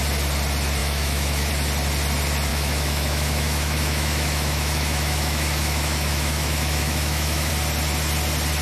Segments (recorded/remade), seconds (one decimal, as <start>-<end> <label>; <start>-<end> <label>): 0.0-0.8 recorded; 0.8-1.5 remade; 1.5-2.5 recorded; 2.5-7.5 remade; 7.5-8.6 recorded